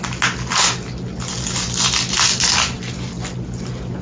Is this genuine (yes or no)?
yes